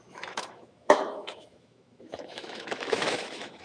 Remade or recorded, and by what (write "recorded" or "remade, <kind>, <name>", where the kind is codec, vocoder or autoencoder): remade, autoencoder, DAC-VAE